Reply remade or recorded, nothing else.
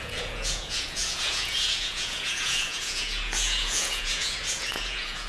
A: remade